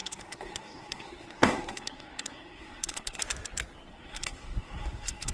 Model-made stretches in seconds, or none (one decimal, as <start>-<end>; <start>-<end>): 0.0-3.2; 3.9-5.3